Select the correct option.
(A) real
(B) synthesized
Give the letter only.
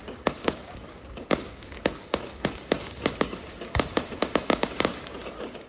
B